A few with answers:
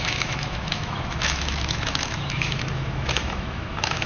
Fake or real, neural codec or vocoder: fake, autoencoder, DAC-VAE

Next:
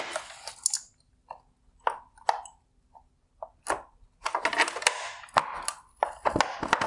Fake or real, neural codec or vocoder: real